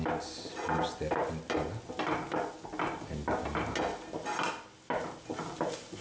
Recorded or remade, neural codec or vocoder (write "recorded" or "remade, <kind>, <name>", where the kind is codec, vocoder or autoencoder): recorded